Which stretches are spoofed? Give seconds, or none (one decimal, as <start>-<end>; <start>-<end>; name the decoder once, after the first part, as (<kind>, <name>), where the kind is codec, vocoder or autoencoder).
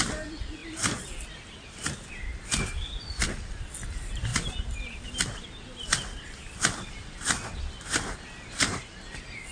0.6-1.9 (vocoder, BigVGAN v2)